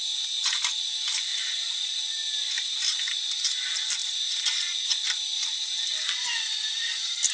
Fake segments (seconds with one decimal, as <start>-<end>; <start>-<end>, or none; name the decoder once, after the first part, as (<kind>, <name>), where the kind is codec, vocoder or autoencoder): 1.3-1.9 (vocoder, BigVGAN v2)